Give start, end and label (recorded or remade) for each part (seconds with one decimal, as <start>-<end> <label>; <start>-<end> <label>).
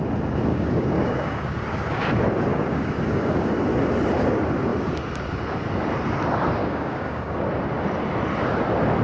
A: 0.0-0.5 recorded; 0.5-2.1 remade; 2.1-2.5 recorded; 2.5-3.5 remade; 3.5-6.6 recorded; 6.6-7.4 remade; 7.4-9.0 recorded